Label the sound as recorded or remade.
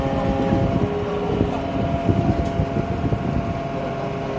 recorded